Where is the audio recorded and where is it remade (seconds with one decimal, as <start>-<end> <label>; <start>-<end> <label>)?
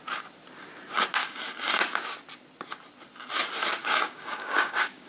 0.0-1.2 recorded; 1.2-1.7 remade; 1.7-3.8 recorded; 3.8-5.1 remade